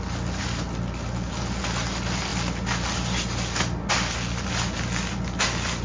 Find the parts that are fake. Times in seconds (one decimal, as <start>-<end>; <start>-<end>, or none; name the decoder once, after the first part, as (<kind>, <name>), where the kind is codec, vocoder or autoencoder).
none